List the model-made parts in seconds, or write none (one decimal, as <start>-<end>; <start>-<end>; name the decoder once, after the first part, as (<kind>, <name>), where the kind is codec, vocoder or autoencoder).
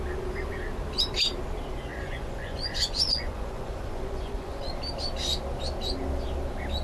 1.9-4.6 (vocoder, Vocos)